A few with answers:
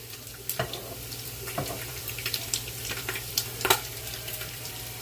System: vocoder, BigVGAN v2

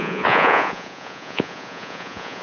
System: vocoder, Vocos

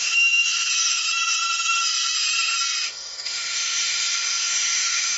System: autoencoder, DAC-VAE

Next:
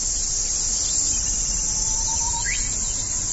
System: vocoder, BigVGAN v2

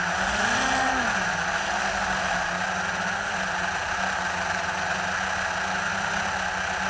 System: none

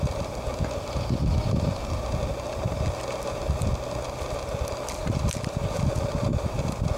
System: none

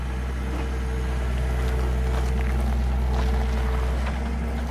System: none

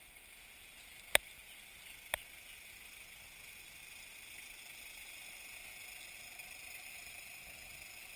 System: none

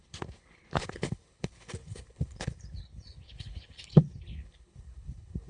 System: codec, HILCodec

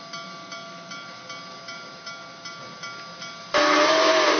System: none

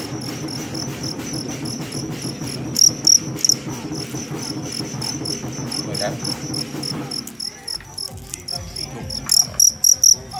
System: none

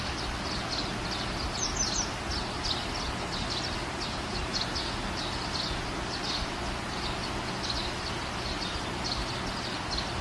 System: none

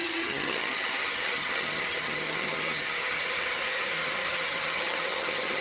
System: vocoder, HiFi-GAN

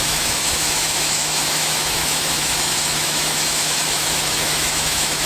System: autoencoder, DAC-VAE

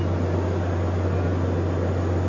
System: none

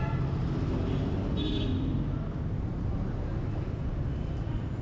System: none